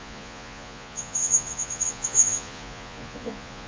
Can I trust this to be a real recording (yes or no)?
no